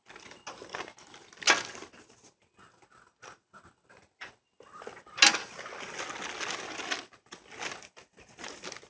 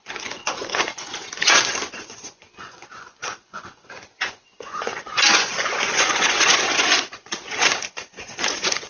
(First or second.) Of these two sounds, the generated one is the second